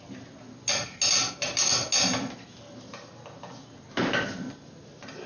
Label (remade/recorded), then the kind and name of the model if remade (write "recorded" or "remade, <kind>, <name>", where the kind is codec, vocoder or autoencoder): recorded